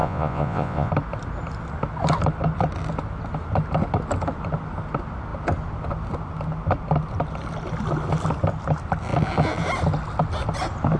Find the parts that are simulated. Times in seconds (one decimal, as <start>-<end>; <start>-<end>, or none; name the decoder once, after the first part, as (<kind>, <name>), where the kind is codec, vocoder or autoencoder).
0.0-0.9 (vocoder, Vocos)